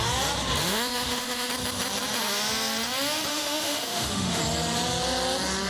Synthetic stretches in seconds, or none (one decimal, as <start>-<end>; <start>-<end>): 0.6-1.5; 3.3-4.4